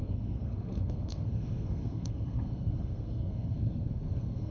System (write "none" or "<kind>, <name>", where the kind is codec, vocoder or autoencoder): codec, SNAC